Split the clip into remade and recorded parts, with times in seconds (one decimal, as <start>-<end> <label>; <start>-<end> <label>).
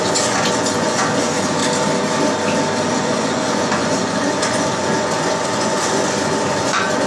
0.0-1.6 remade; 1.6-2.9 recorded; 2.9-7.1 remade